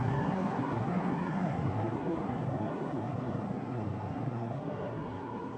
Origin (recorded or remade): remade